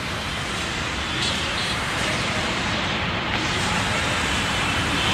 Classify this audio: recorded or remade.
remade